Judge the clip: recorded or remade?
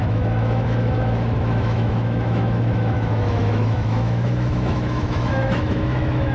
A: remade